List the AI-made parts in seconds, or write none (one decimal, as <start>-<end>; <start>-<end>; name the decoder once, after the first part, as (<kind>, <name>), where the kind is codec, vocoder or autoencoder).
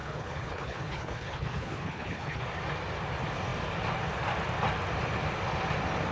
0.0-2.4 (codec, HILCodec)